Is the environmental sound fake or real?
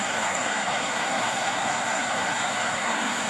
fake